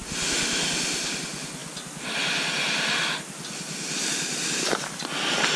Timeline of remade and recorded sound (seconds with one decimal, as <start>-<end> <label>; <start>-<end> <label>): 0.0-5.6 recorded